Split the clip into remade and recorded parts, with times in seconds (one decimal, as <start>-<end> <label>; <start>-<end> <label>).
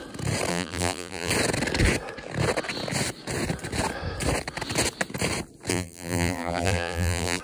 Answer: 0.0-0.5 recorded; 0.5-1.3 remade; 1.3-5.7 recorded; 5.7-7.4 remade